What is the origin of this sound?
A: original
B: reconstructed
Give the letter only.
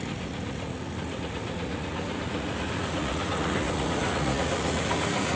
B